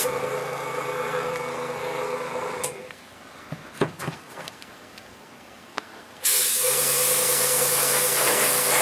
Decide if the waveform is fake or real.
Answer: fake